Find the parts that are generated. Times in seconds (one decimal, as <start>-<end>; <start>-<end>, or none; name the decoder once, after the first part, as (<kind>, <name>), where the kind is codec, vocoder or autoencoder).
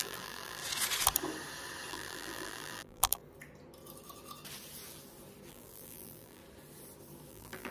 0.0-0.6 (vocoder, BigVGAN v2); 1.9-3.2; 5.5-6.4; 7.3-7.7